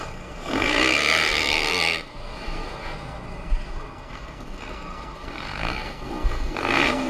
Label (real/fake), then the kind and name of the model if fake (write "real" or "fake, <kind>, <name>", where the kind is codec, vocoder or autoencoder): fake, codec, SNAC